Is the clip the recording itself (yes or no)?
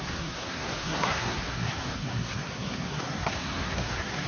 no